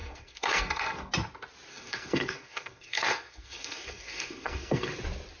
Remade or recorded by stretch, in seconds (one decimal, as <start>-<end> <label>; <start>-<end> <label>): 0.0-1.1 remade; 1.1-1.7 recorded; 1.7-4.9 remade; 4.9-5.4 recorded